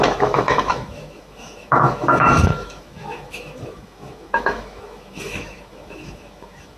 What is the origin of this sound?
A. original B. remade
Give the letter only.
B